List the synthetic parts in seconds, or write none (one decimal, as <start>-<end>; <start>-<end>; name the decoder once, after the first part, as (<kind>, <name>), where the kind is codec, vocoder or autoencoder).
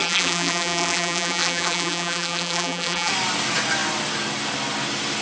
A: 0.0-3.1 (vocoder, BigVGAN v2)